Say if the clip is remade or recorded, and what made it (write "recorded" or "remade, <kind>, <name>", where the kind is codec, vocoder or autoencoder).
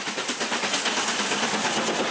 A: recorded